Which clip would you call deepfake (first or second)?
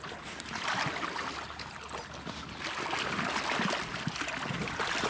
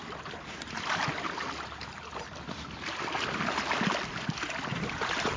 second